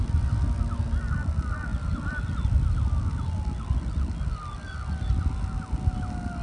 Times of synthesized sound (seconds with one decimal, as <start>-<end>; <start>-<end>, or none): none